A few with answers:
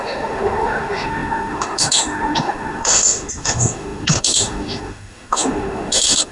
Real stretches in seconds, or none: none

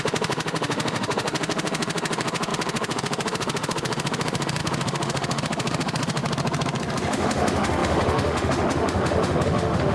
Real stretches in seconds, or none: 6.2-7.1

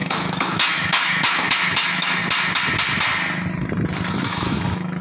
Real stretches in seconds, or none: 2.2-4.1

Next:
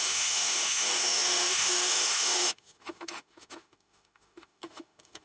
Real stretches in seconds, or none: none

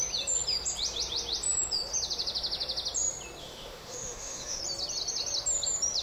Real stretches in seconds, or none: 0.0-3.4; 4.6-6.0